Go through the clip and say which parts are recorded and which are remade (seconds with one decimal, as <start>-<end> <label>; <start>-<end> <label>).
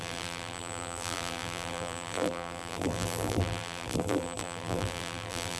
0.0-5.6 remade